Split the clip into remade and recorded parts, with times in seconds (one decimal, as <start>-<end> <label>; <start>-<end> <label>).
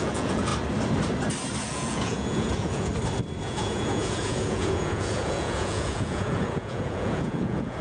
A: 0.0-0.5 remade; 0.5-1.6 recorded; 1.6-2.9 remade; 2.9-3.4 recorded; 3.4-7.8 remade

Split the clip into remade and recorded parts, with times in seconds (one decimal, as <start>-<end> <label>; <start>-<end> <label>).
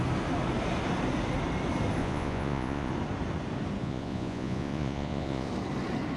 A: 0.0-2.0 recorded; 2.0-2.9 remade; 2.9-3.8 recorded; 3.8-5.5 remade; 5.5-6.2 recorded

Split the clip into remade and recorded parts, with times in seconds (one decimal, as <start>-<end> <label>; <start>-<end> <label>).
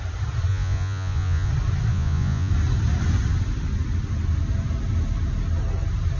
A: 0.0-0.5 recorded; 0.5-1.5 remade; 1.5-1.9 recorded; 1.9-2.5 remade; 2.5-6.2 recorded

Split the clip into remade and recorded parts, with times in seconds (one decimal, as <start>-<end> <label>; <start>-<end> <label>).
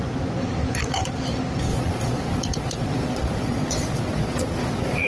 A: 0.0-1.7 recorded; 1.7-5.1 remade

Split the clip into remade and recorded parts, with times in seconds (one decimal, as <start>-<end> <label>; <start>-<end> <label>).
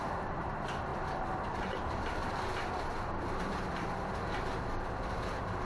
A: 0.0-0.9 remade; 0.9-1.5 recorded; 1.5-2.2 remade; 2.2-5.0 recorded; 5.0-5.6 remade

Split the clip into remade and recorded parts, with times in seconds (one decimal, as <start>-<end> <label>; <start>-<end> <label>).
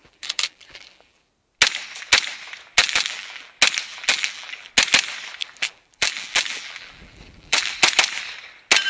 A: 0.0-1.3 remade; 1.3-2.8 recorded; 2.8-3.5 remade; 3.5-3.9 recorded; 3.9-4.7 remade; 4.7-5.4 recorded; 5.4-7.7 remade; 7.7-8.9 recorded